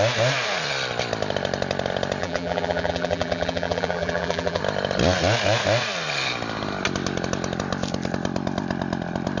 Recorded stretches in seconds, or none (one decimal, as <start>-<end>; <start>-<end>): 0.0-2.2; 4.6-9.4